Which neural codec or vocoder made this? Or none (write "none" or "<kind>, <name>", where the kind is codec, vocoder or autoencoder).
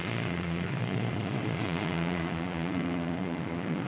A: vocoder, Vocos